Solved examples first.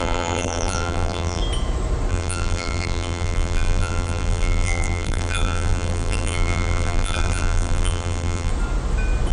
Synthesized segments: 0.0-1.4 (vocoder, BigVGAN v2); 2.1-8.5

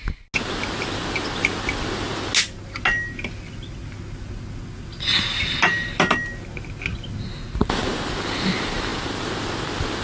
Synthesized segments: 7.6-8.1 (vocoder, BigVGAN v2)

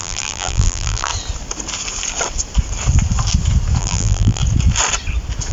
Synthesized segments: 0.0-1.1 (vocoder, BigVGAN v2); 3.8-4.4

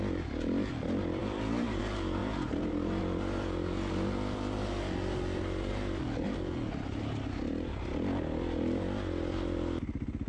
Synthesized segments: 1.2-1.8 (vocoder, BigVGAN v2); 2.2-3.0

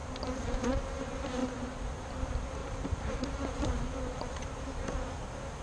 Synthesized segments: 0.0-0.6 (vocoder, BigVGAN v2); 2.6-3.3

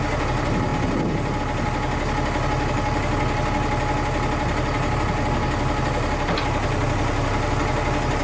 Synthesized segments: none

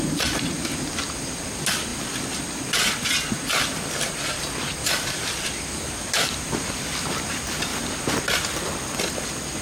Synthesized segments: 4.8-6.9 (vocoder, BigVGAN v2)